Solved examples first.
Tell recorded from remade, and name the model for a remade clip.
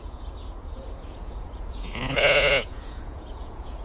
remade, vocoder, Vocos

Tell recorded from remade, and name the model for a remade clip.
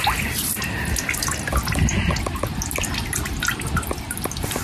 recorded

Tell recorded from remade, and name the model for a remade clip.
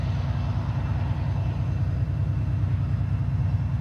recorded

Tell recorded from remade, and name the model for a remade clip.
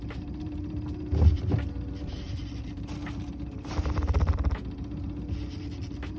recorded